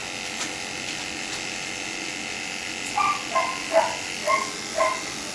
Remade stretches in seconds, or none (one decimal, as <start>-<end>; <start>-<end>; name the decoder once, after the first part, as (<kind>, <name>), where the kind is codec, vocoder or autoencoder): none